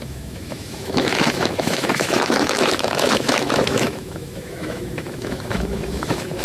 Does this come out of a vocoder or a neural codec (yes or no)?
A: yes